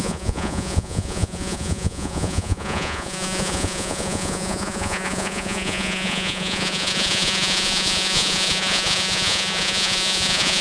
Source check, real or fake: fake